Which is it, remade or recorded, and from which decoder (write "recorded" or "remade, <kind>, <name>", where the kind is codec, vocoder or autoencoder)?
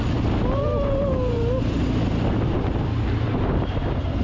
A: recorded